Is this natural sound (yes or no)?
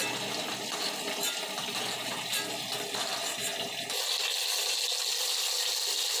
yes